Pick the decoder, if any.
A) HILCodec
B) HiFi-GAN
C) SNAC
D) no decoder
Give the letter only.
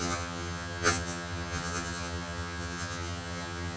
B